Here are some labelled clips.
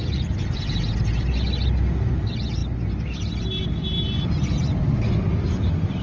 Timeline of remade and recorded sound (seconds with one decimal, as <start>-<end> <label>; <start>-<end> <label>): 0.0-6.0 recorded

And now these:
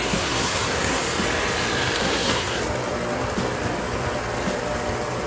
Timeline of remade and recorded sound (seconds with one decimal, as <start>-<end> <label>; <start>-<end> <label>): 0.0-1.0 remade; 1.0-2.0 recorded; 2.0-2.6 remade; 2.6-5.3 recorded

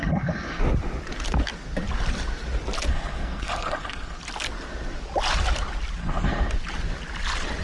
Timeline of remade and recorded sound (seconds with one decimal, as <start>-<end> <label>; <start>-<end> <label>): 0.0-0.6 remade; 0.6-2.9 recorded; 2.9-4.2 remade; 4.2-6.0 recorded; 6.0-6.5 remade; 6.5-7.6 recorded

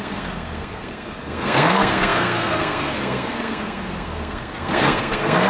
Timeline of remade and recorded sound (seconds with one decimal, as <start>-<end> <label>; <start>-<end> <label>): 0.0-5.5 remade

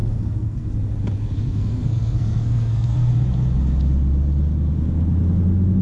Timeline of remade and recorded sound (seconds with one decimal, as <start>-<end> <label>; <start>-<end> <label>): 0.0-0.7 remade; 0.7-1.2 recorded; 1.2-3.1 remade; 3.1-5.8 recorded

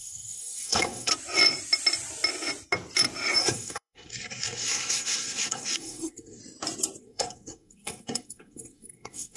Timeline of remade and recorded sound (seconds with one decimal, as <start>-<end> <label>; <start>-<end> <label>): 0.0-1.1 remade; 1.1-3.4 recorded; 3.4-6.4 remade; 6.4-7.0 recorded; 7.0-9.4 remade